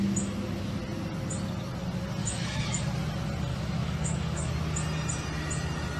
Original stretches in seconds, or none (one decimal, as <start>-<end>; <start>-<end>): 0.0-2.2; 2.8-3.5; 4.5-6.0